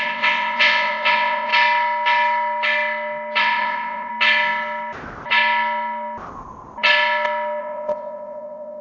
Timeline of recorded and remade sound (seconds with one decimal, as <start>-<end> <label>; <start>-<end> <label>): 0.0-1.5 remade; 1.5-3.4 recorded; 3.4-4.1 remade; 4.1-7.6 recorded; 7.6-8.8 remade